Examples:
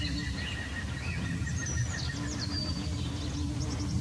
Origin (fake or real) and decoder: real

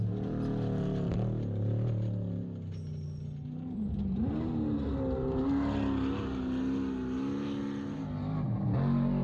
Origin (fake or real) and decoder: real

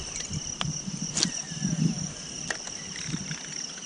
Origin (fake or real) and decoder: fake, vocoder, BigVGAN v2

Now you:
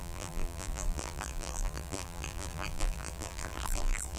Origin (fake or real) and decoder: fake, vocoder, BigVGAN v2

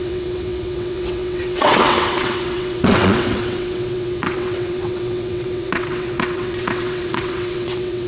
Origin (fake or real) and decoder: fake, vocoder, WaveNeXt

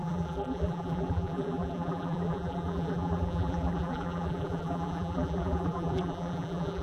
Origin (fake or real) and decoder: fake, vocoder, BigVGAN v2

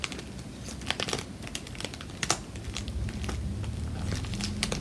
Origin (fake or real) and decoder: real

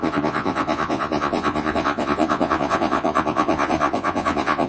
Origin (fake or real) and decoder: fake, vocoder, Vocos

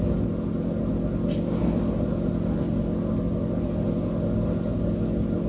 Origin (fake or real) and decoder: real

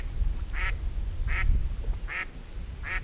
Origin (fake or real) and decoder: real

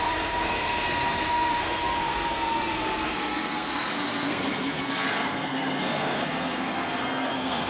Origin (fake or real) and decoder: fake, codec, SNAC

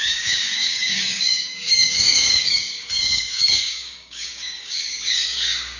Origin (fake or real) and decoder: fake, codec, DAC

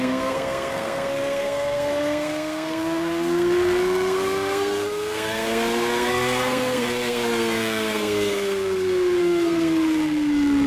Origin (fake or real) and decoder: fake, codec, SNAC